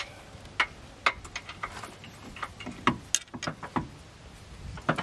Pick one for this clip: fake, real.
real